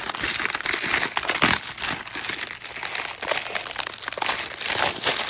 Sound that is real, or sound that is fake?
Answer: real